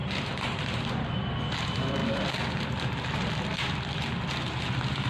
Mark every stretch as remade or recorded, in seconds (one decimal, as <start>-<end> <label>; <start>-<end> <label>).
0.0-5.1 recorded